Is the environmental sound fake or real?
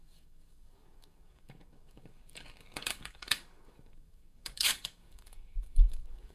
fake